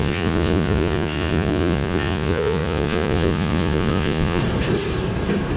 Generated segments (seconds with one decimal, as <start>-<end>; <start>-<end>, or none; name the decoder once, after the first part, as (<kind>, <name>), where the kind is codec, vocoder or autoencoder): 0.0-4.4 (vocoder, Vocos)